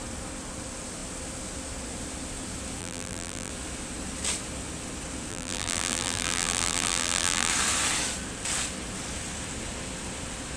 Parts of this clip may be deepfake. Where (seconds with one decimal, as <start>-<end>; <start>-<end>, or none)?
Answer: 2.8-3.5; 5.3-7.5